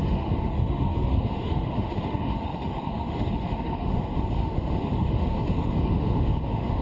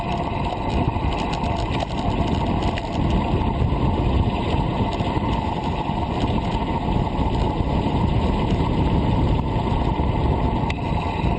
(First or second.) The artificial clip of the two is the first